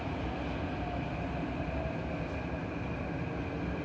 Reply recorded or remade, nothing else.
recorded